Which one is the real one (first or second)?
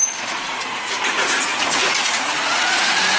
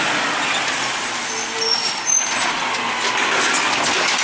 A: second